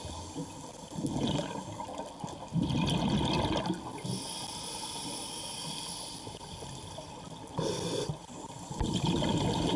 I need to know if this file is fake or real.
real